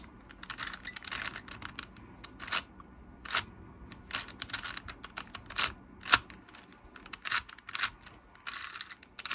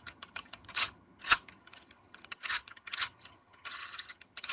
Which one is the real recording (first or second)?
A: first